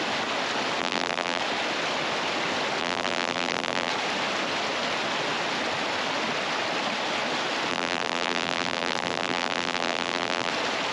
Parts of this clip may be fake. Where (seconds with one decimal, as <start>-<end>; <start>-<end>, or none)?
0.8-1.4; 2.8-3.9; 7.7-10.5